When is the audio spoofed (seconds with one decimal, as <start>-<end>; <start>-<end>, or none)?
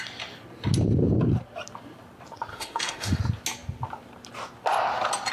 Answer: 2.5-3.2